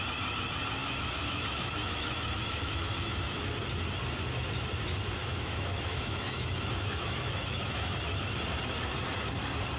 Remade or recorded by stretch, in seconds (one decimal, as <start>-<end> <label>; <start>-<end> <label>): 0.0-0.8 recorded; 0.8-3.5 remade; 3.5-5.2 recorded; 5.2-8.3 remade; 8.3-9.8 recorded